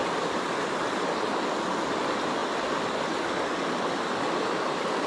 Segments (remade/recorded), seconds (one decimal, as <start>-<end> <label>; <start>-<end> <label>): 0.0-5.1 recorded